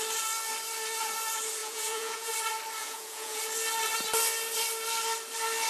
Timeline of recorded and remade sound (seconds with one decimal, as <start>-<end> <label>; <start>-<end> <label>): 0.0-1.6 recorded; 1.6-2.3 remade; 2.3-2.8 recorded; 2.8-3.4 remade; 3.4-5.7 recorded

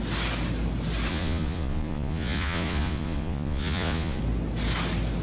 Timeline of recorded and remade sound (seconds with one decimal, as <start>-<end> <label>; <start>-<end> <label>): 0.0-1.1 recorded; 1.1-4.2 remade; 4.2-5.2 recorded

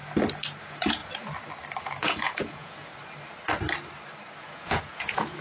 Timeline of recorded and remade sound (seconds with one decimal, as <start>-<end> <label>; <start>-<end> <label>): 0.0-0.6 recorded; 0.6-1.0 remade; 1.0-1.8 recorded; 1.8-2.9 remade; 2.9-4.4 recorded; 4.4-5.4 remade

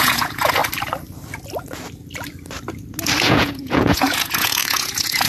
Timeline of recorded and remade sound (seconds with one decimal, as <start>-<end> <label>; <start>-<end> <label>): 0.0-0.6 remade; 0.6-3.2 recorded; 3.2-5.3 remade

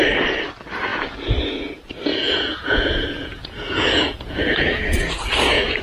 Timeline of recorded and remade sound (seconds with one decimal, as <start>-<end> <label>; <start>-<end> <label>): 0.0-2.1 recorded; 2.1-5.8 remade

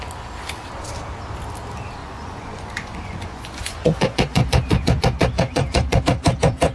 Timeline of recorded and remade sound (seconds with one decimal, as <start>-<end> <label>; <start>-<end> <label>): 0.0-2.0 recorded; 2.0-6.0 remade; 6.0-6.7 recorded